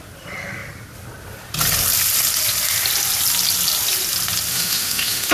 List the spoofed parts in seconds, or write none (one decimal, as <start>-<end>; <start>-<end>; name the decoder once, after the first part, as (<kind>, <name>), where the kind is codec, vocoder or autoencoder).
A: 4.5-5.3 (autoencoder, DAC-VAE)